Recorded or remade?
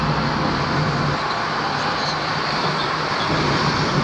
recorded